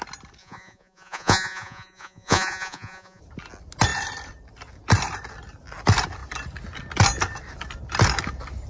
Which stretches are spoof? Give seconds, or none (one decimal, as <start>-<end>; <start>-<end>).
0.4-3.2